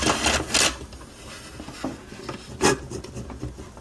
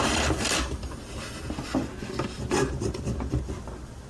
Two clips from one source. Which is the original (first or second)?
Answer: first